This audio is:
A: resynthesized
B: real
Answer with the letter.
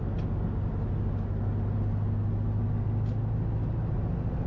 B